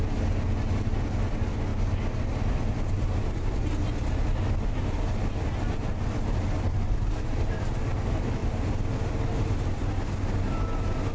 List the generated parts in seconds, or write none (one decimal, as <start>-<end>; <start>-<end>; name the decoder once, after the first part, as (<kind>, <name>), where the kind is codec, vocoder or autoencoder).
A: none